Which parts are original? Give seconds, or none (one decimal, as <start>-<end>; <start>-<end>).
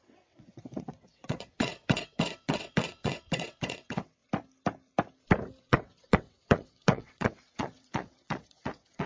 4.2-5.6